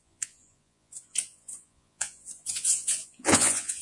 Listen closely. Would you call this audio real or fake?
fake